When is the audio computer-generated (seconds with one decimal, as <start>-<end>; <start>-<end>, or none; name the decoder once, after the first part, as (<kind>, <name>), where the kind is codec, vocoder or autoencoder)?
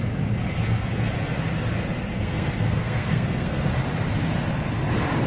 2.1-3.7 (codec, SNAC)